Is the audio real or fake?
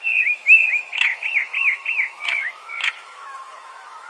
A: fake